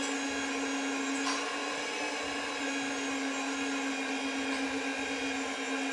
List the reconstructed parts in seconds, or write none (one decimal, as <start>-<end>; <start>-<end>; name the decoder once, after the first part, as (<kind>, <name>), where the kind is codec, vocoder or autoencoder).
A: 1.6-2.2 (vocoder, BigVGAN v2)

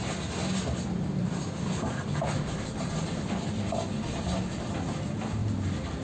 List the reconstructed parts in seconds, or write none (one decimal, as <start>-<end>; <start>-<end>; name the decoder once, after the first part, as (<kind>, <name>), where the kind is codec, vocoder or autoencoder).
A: 0.4-2.9 (vocoder, BigVGAN v2); 5.4-6.0

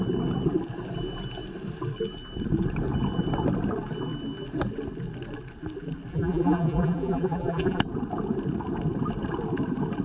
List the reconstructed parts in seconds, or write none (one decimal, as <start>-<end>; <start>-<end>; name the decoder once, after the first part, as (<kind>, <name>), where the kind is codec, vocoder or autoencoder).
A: 6.1-7.8 (vocoder, BigVGAN v2)